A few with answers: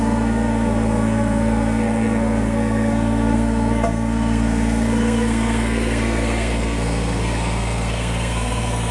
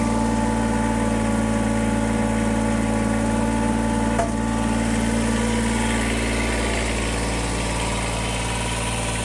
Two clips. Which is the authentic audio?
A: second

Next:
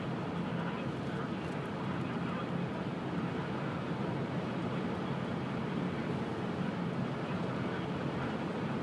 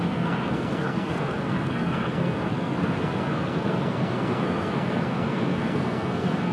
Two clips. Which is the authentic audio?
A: first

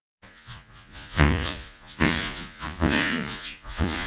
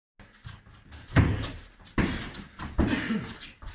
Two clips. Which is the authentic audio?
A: second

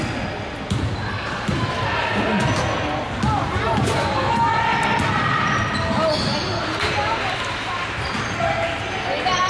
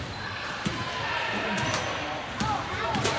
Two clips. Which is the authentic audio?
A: first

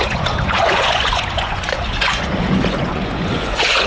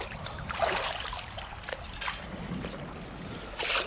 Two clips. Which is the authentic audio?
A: second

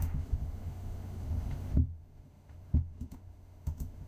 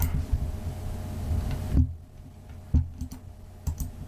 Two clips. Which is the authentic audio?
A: second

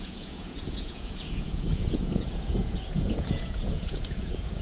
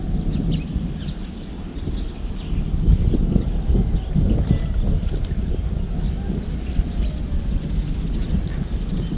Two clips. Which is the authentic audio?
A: second